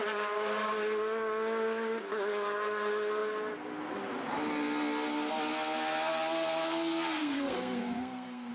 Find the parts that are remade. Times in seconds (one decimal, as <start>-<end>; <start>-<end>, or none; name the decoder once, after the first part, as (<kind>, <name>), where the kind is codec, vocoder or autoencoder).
7.2-8.5 (codec, SNAC)